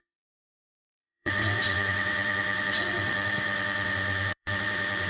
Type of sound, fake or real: fake